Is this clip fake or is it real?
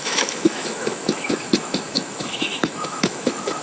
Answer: fake